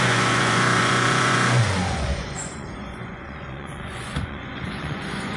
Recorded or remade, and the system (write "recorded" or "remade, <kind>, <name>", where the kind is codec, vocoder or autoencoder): remade, vocoder, Vocos